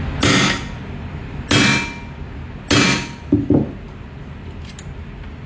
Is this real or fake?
real